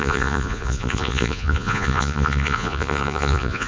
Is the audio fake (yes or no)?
yes